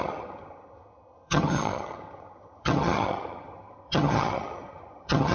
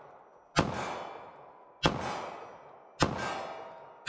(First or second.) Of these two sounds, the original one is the second